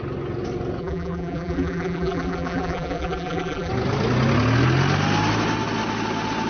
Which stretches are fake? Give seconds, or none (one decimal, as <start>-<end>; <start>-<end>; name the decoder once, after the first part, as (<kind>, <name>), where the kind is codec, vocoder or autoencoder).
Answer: 0.8-3.7 (vocoder, BigVGAN v2)